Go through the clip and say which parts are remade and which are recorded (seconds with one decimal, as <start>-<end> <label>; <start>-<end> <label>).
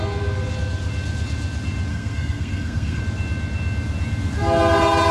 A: 0.0-1.9 recorded; 1.9-3.0 remade; 3.0-5.1 recorded